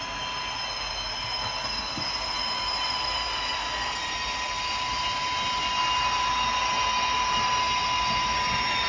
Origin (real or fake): real